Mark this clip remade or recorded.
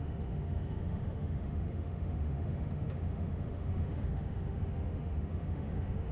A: remade